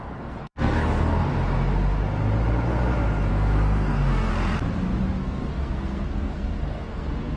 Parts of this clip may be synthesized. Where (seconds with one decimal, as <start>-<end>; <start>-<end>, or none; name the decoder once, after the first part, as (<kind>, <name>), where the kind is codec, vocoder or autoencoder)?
0.0-1.3 (codec, SNAC); 3.3-4.3; 5.2-7.4